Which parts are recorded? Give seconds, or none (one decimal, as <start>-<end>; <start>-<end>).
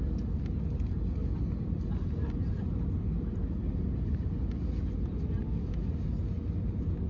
0.0-7.1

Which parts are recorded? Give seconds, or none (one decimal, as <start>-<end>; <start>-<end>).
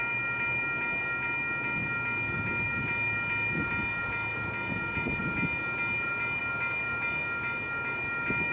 0.0-8.5